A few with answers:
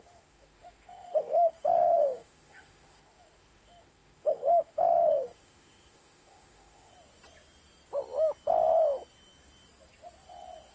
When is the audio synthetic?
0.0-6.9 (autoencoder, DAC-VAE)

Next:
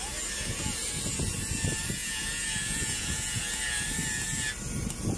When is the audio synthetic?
2.0-3.4 (vocoder, Vocos)

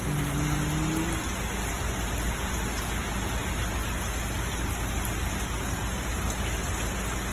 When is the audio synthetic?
none